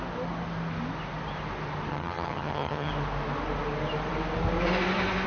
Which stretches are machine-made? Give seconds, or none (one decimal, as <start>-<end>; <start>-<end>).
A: 1.9-2.9